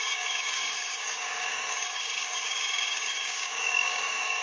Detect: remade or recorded remade